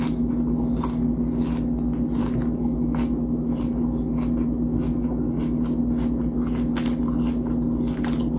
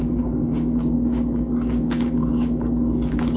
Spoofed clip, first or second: second